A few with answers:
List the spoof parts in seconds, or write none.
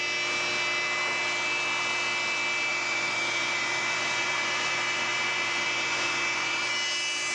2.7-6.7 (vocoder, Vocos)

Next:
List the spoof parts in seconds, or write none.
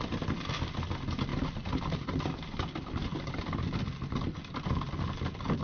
1.3-1.8 (vocoder, BigVGAN v2); 3.1-4.1